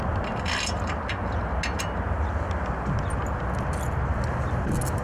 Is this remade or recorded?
recorded